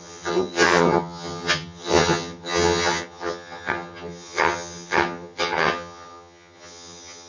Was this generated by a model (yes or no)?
yes